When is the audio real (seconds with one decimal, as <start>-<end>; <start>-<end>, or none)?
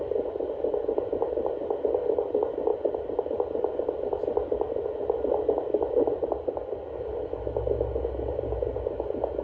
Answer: 0.0-9.4